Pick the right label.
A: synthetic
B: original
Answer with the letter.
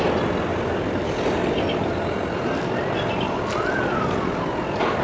B